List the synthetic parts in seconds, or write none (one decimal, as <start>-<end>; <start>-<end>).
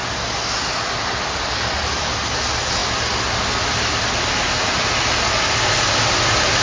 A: none